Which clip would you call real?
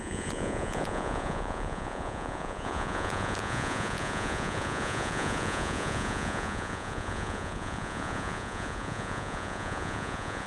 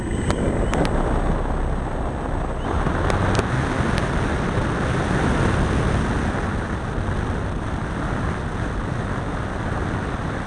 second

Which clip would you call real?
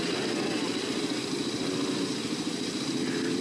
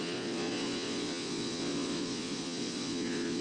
first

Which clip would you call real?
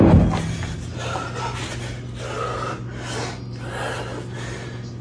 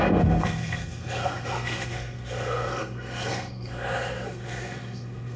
first